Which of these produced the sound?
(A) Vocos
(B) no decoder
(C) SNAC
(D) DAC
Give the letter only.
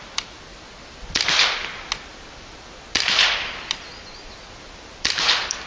B